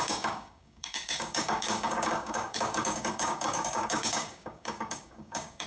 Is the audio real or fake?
fake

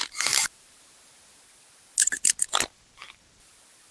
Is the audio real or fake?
real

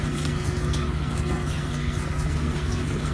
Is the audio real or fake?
fake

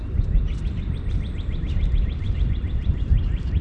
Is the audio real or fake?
real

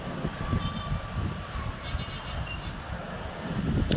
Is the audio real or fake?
fake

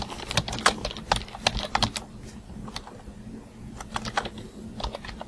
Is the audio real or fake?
real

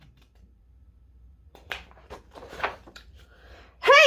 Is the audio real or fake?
fake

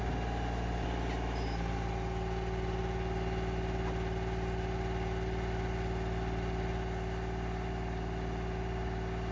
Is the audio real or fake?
real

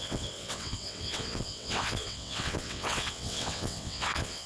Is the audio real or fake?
fake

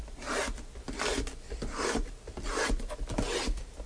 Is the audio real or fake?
real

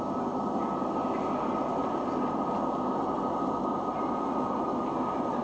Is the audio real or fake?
real